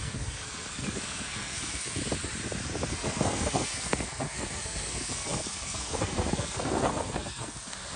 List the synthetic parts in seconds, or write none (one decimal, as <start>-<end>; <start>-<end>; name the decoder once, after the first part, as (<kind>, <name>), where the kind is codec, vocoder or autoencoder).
0.0-2.0 (codec, SNAC); 2.9-8.0